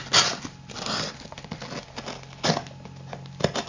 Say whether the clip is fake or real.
real